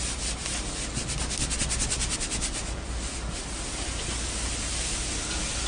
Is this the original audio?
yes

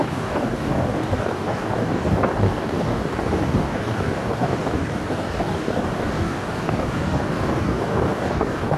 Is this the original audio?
no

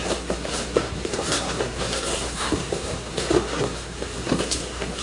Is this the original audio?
no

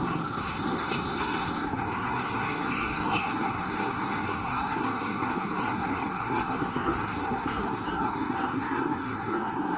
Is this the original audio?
no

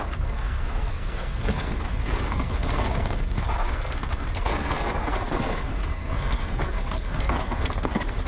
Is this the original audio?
no